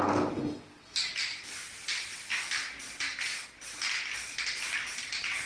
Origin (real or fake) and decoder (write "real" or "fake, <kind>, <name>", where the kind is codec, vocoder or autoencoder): real